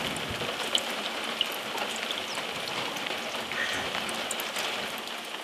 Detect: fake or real real